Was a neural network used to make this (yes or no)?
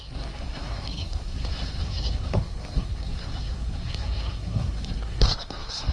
yes